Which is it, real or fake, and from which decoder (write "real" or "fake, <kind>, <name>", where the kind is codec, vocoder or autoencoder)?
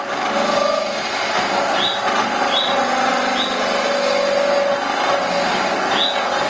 real